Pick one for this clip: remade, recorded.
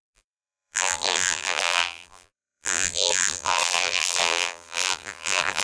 remade